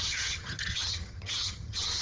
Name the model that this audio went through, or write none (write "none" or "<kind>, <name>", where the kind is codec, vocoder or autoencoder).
vocoder, HiFi-GAN